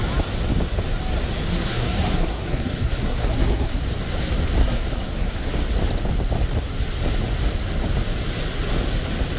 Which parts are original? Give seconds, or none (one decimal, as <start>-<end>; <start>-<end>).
0.0-1.5; 3.8-4.6; 5.5-9.4